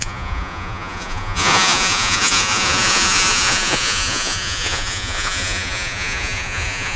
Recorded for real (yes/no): no